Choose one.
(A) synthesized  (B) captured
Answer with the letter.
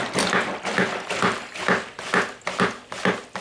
B